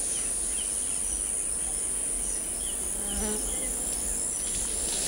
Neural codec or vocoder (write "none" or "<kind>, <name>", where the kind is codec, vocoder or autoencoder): none